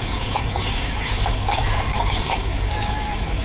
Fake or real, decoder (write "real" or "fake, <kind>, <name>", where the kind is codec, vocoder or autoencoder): fake, codec, DAC